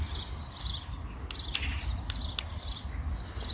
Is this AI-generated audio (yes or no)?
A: no